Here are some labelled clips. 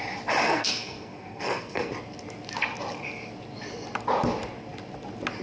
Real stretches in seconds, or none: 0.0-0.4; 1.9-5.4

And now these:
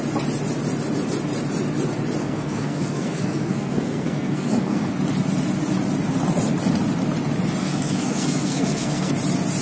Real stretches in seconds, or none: 0.0-2.2; 4.9-7.6; 9.1-9.6

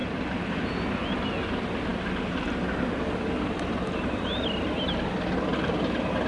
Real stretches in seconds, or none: 0.0-6.3

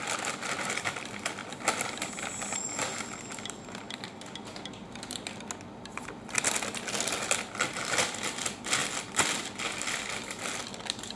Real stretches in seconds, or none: 0.0-11.2